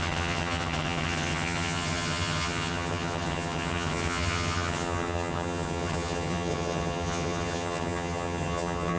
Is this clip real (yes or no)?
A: no